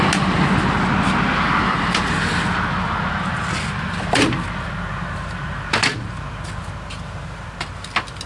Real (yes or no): yes